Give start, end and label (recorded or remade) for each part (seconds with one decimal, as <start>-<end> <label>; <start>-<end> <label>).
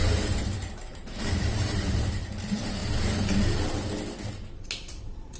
0.0-2.8 remade; 2.8-5.0 recorded; 5.0-5.4 remade